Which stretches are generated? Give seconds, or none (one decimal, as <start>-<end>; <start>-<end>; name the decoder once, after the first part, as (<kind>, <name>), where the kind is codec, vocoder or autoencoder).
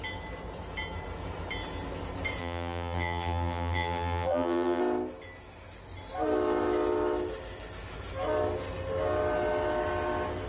2.4-4.8 (vocoder, BigVGAN v2)